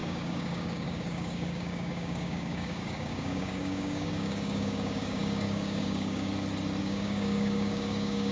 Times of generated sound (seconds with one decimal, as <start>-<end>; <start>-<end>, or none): 0.0-6.3; 6.8-8.3